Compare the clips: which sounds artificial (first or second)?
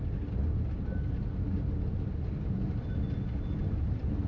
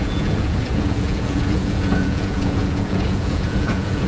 second